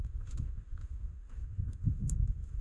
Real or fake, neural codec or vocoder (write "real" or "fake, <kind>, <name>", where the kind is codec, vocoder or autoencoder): fake, autoencoder, DAC-VAE